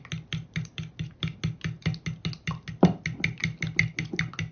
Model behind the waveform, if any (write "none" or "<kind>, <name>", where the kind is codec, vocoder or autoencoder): none